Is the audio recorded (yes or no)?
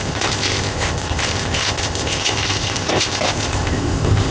no